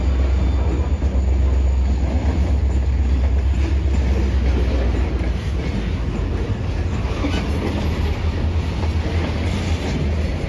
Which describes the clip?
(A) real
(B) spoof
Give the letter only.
A